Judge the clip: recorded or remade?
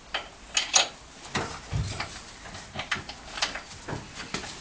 recorded